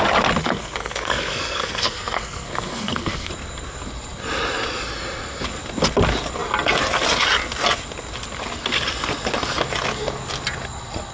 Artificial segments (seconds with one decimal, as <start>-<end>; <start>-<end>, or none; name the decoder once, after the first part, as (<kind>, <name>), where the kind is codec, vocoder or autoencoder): 0.4-3.3 (codec, SNAC)